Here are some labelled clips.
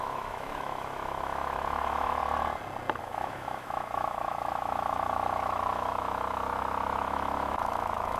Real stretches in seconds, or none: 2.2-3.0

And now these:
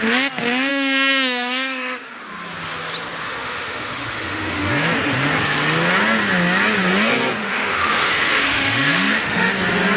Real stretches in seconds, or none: 0.0-0.7; 2.2-3.2; 4.7-7.4; 9.5-10.0

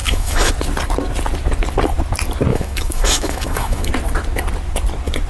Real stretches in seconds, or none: 0.5-2.5; 3.9-5.3

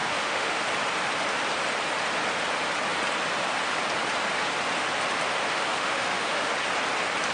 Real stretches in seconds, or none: 0.6-5.5; 6.5-7.3

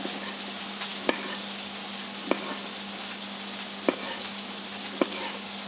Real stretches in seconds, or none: 0.0-5.7

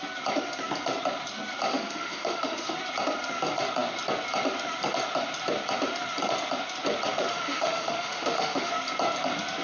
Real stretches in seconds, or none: 0.0-1.7; 2.8-7.3; 8.7-9.6

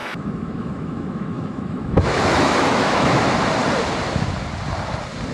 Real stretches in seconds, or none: 3.2-5.3